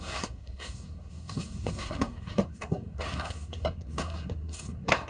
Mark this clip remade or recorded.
remade